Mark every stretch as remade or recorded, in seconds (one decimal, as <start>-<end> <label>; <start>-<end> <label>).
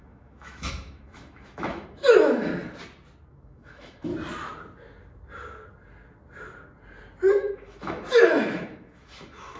0.0-2.5 remade; 2.5-3.3 recorded; 3.3-4.1 remade; 4.1-7.3 recorded; 7.3-9.6 remade